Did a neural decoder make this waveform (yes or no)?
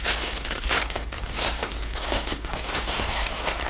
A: yes